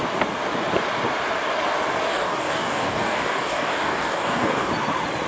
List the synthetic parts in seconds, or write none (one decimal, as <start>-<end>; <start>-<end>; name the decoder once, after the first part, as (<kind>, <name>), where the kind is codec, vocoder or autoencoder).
2.1-4.7 (codec, DAC)

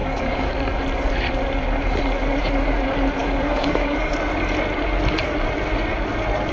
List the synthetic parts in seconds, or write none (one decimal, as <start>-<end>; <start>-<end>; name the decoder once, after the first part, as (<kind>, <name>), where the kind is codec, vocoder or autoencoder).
0.0-0.5 (codec, DAC); 3.2-4.1

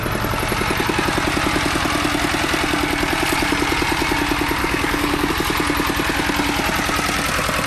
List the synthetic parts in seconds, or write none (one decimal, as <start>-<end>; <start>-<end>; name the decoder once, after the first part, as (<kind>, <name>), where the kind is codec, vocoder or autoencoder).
4.6-5.3 (codec, DAC)

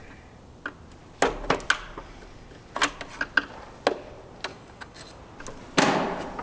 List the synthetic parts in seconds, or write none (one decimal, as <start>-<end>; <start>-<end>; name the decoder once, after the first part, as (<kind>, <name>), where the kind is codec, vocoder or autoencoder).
4.5-5.2 (codec, DAC)